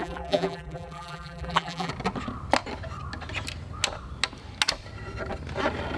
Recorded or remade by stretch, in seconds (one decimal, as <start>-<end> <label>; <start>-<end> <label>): 0.0-1.9 remade; 1.9-6.0 recorded